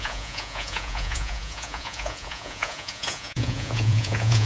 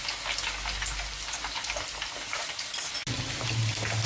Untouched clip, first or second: second